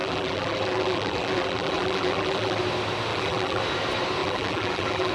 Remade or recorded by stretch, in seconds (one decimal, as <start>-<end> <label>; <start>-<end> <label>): 0.0-2.6 remade; 2.6-3.1 recorded; 3.1-3.6 remade; 3.6-4.2 recorded; 4.2-5.1 remade